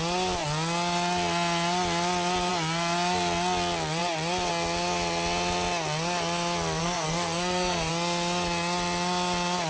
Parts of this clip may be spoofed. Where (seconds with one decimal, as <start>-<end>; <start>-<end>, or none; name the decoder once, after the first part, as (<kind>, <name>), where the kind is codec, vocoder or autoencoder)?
6.8-7.9 (codec, SNAC)